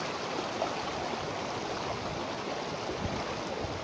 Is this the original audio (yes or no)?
yes